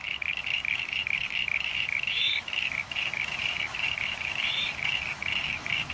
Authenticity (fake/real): fake